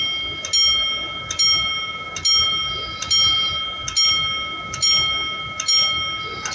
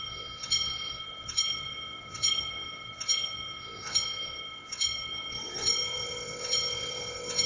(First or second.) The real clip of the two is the first